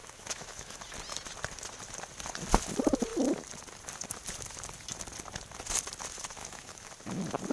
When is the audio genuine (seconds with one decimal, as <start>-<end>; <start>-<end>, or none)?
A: 0.8-6.4; 6.9-7.5